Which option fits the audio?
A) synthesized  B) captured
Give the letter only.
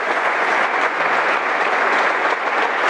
A